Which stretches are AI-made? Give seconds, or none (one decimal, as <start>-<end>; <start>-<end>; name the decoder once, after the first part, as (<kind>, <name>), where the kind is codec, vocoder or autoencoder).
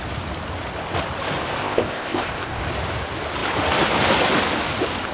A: 1.6-2.6 (codec, ZipCodec)